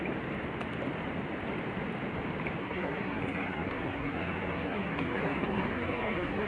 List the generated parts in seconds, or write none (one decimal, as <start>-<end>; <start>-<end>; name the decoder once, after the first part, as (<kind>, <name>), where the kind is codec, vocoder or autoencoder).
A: 2.6-6.5 (codec, SNAC)